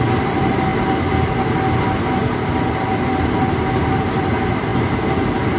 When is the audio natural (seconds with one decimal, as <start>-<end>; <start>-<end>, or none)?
0.7-4.1; 4.7-5.6